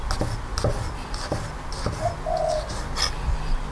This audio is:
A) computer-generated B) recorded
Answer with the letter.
B